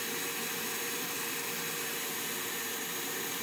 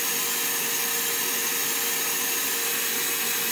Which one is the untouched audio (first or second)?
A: second